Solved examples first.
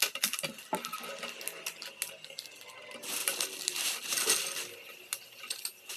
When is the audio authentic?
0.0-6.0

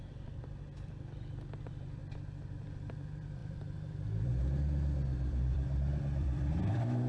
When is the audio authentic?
2.0-2.6